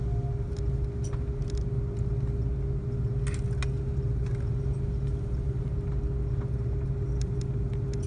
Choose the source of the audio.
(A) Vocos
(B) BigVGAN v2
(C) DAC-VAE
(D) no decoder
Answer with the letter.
D